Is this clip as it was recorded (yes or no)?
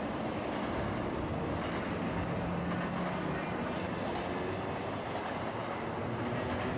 yes